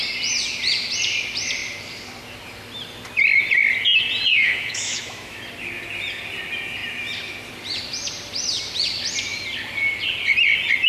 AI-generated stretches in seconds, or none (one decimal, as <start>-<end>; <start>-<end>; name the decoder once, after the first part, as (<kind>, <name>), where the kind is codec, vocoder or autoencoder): 4.3-5.4 (autoencoder, DAC-VAE)